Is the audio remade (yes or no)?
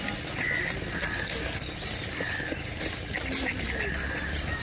no